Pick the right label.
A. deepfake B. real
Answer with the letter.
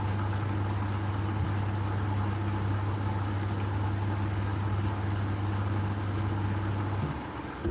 B